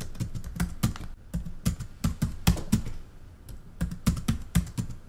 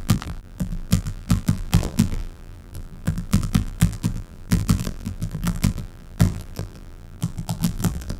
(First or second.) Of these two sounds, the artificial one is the second